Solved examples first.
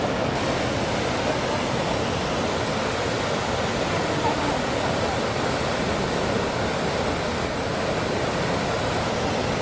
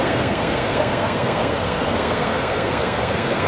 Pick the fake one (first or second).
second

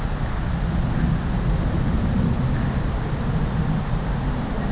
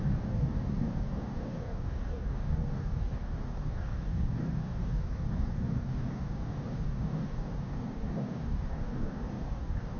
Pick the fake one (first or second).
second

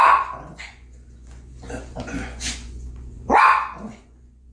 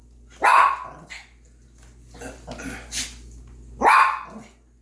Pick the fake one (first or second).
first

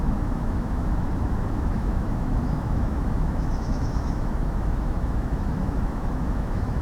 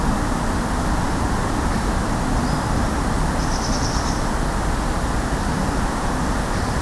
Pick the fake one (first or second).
first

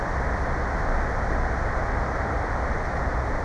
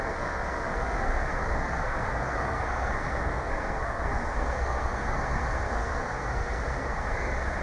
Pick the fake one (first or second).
second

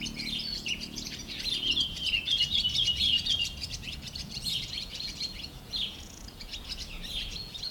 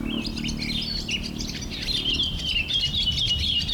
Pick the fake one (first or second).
first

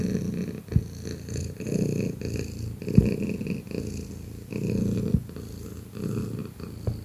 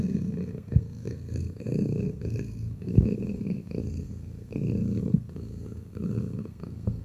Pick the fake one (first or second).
second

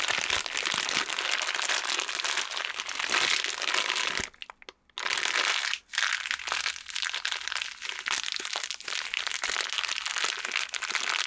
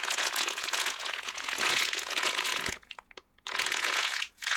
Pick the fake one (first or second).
second